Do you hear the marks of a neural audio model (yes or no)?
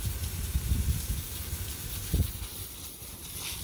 no